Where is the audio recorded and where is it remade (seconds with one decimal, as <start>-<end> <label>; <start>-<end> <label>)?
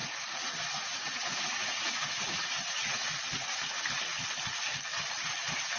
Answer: 0.0-3.1 remade; 3.1-5.8 recorded